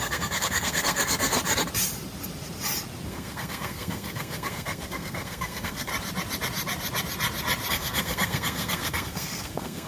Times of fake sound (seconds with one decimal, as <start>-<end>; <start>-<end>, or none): 0.0-1.4; 3.1-5.9; 7.7-9.9